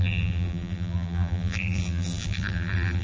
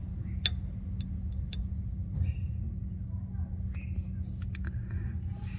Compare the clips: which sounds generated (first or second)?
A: first